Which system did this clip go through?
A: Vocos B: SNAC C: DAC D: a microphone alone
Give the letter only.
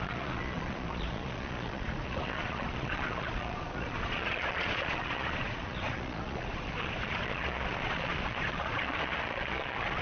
A